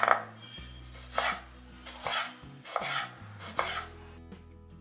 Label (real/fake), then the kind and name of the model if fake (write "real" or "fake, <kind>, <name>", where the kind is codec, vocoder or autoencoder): real